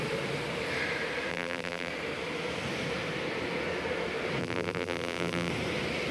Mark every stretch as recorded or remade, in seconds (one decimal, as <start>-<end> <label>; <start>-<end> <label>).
0.0-1.3 recorded; 1.3-1.9 remade; 1.9-4.4 recorded; 4.4-5.5 remade; 5.5-6.1 recorded